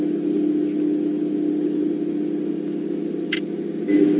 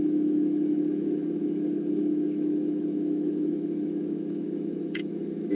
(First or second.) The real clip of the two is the first